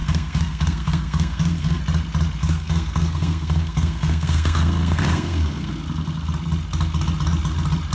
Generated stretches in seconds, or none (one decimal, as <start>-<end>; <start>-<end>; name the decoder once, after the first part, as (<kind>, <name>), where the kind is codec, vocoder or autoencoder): 0.0-1.8 (codec, SNAC); 2.4-5.7